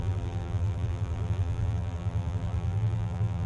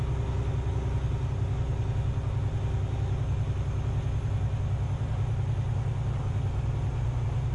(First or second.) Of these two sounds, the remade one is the first